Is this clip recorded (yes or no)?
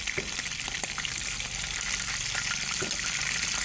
yes